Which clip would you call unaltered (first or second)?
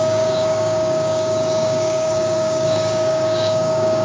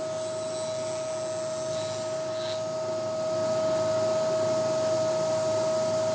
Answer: second